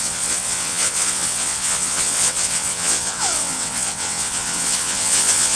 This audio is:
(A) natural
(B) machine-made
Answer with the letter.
B